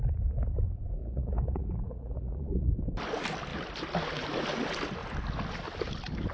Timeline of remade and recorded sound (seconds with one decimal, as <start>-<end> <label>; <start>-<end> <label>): 0.0-1.0 recorded; 1.0-2.7 remade; 2.7-6.3 recorded